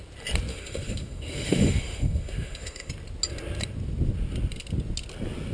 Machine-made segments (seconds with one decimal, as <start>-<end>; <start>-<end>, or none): 0.5-2.9